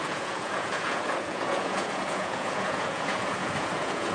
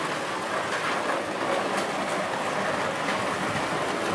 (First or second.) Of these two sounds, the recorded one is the second